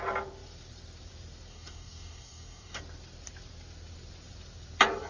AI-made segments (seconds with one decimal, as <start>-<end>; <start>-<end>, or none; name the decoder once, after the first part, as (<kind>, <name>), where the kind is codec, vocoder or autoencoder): 1.5-2.8 (codec, DAC)